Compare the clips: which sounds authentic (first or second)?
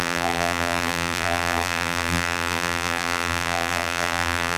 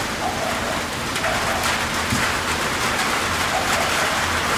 second